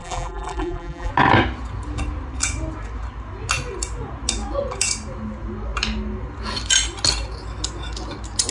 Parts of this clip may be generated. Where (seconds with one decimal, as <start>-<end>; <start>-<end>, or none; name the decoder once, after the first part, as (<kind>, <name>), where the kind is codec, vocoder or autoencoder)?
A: 0.0-1.1 (vocoder, BigVGAN v2)